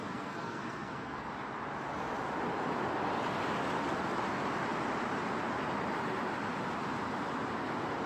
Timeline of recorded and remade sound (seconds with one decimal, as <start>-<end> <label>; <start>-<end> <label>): 0.0-1.3 remade; 1.3-8.1 recorded